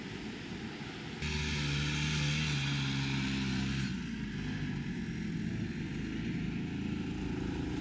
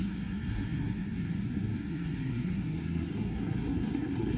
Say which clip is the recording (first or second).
first